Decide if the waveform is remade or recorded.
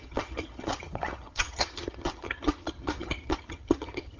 remade